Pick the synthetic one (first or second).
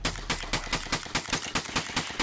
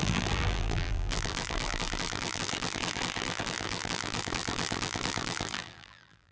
second